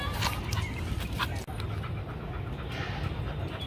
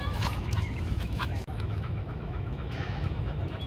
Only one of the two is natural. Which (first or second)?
first